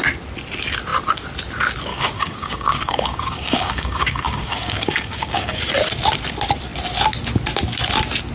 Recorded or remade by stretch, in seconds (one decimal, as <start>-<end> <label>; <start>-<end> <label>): 0.0-1.9 recorded; 1.9-5.6 remade; 5.6-8.3 recorded